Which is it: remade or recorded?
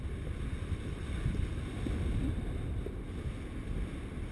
recorded